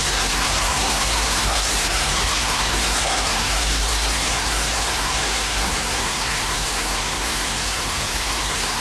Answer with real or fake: fake